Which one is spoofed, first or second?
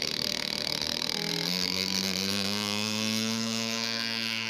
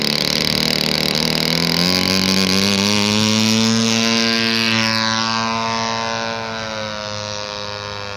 first